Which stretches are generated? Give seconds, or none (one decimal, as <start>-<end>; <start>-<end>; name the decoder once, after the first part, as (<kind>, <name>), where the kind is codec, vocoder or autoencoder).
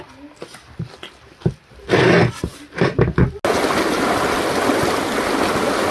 none